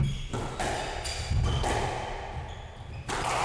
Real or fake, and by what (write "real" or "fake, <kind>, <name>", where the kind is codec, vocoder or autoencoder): real